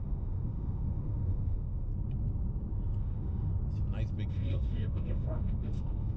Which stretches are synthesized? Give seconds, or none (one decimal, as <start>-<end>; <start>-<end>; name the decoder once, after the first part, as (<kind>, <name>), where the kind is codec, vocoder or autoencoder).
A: 0.0-1.9 (autoencoder, DAC-VAE); 3.0-3.5; 4.3-6.2